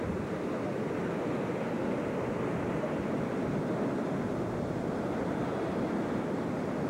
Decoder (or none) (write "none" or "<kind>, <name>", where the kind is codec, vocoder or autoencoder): none